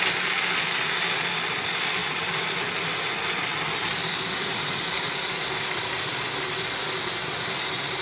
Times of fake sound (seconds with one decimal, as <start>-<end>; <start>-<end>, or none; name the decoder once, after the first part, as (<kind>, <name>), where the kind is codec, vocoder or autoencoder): 2.0-2.6 (vocoder, BigVGAN v2)